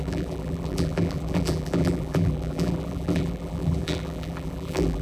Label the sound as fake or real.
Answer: fake